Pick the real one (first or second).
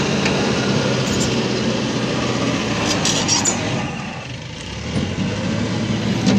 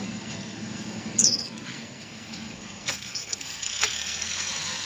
first